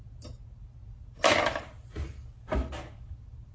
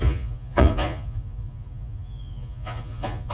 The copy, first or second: second